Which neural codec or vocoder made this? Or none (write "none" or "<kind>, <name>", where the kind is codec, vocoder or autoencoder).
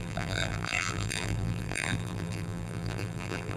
vocoder, BigVGAN v2